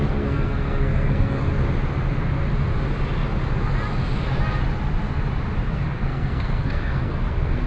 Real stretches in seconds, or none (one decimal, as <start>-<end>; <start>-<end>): 1.5-5.7